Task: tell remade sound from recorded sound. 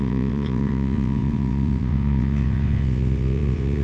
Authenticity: remade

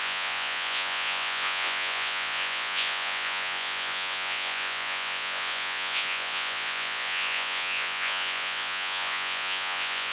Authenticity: remade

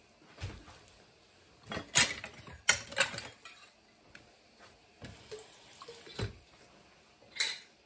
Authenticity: recorded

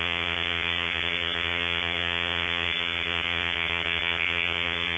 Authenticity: remade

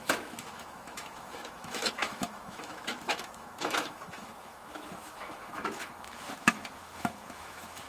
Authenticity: remade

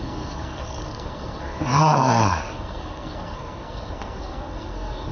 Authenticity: remade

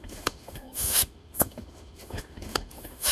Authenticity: remade